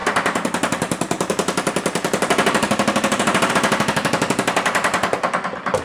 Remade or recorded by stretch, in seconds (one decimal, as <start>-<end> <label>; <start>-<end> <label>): 0.0-3.5 remade; 3.5-5.8 recorded

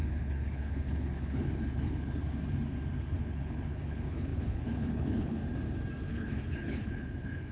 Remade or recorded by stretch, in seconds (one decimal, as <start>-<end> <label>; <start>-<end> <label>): 0.0-2.2 remade; 2.2-3.0 recorded; 3.0-5.4 remade; 5.4-6.1 recorded; 6.1-7.5 remade

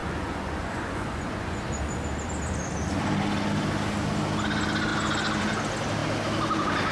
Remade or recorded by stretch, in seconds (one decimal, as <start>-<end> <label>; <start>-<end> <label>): 0.0-1.6 remade; 1.6-6.9 recorded

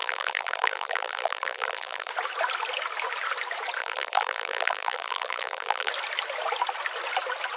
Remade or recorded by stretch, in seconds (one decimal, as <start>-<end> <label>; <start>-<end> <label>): 0.0-2.1 remade; 2.1-3.8 recorded; 3.8-5.9 remade; 5.9-7.6 recorded

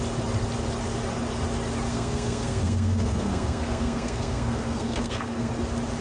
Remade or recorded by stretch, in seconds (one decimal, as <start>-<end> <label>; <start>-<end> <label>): 0.0-1.9 recorded; 1.9-5.5 remade; 5.5-6.0 recorded

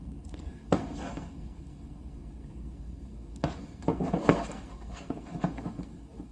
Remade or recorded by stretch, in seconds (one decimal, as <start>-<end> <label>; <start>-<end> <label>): 0.0-6.3 remade

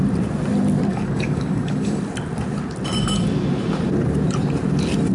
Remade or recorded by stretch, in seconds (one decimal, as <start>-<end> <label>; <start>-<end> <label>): 0.0-0.9 recorded; 0.9-2.0 remade; 2.0-5.1 recorded